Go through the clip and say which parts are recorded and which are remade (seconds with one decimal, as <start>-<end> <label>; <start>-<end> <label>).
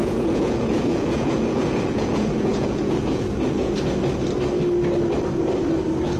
0.0-3.7 remade; 3.7-6.2 recorded